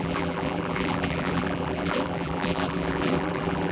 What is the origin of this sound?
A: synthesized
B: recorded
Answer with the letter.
A